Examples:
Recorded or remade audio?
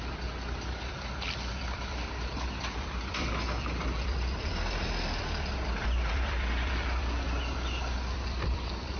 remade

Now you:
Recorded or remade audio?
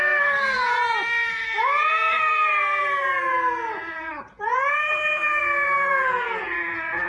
remade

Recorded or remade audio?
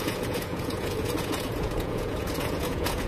remade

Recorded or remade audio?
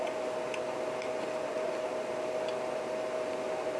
recorded